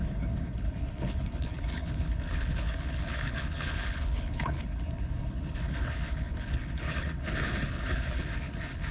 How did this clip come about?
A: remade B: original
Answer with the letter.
A